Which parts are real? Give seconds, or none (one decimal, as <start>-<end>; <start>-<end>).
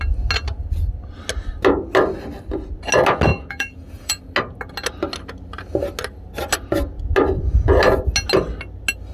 0.0-3.3; 4.2-9.1